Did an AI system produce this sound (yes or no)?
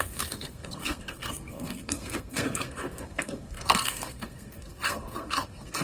yes